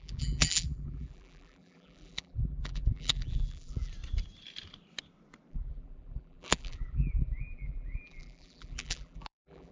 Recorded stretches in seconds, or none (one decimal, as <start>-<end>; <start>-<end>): 3.9-5.5